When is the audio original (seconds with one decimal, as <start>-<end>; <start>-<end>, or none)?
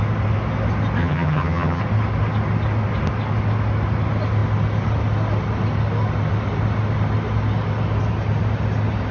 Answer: 0.0-1.0; 1.8-9.1